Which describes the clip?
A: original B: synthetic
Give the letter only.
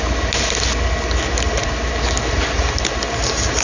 A